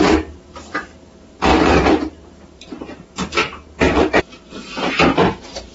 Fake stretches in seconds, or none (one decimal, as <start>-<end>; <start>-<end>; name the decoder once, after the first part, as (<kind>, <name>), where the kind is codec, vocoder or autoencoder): 1.5-4.9 (vocoder, BigVGAN v2)